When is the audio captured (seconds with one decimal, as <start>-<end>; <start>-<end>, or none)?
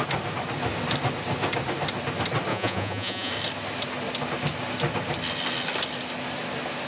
0.0-2.5; 3.3-6.9